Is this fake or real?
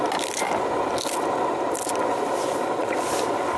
real